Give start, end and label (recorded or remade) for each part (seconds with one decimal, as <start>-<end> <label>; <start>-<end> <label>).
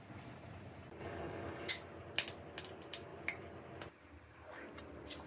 0.0-1.0 recorded; 1.0-1.7 remade; 1.7-5.3 recorded